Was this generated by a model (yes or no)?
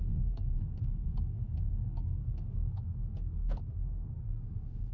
yes